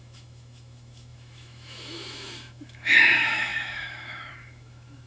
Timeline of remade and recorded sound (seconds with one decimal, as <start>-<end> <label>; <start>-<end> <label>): 0.0-5.1 remade